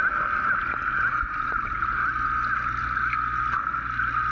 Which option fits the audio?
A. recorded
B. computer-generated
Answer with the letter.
A